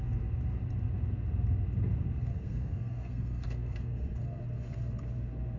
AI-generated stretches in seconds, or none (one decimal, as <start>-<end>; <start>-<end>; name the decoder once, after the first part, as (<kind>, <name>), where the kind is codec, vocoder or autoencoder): 2.3-4.4 (codec, SNAC)